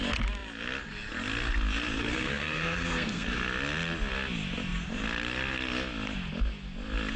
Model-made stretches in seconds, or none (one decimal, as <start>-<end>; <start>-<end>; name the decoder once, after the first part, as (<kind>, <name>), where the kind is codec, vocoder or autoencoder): 2.0-3.4 (codec, SNAC)